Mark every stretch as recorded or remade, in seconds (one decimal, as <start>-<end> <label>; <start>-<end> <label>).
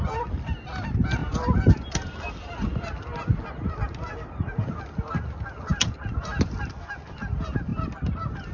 0.0-8.5 recorded